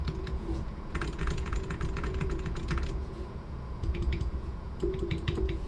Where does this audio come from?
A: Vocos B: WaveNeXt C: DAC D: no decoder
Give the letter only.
A